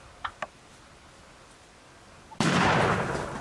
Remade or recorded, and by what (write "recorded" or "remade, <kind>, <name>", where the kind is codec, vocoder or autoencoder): recorded